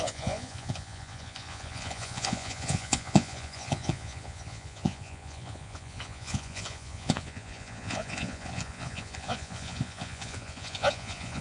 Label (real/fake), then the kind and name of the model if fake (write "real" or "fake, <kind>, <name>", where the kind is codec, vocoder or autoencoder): fake, vocoder, Vocos